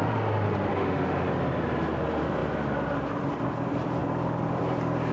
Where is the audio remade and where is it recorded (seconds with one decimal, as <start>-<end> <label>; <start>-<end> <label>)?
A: 0.0-0.7 recorded; 0.7-1.3 remade; 1.3-5.1 recorded